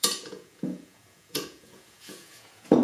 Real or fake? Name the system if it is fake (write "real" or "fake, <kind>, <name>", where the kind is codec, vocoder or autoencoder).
fake, vocoder, Vocos